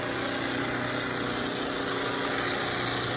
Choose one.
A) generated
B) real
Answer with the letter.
B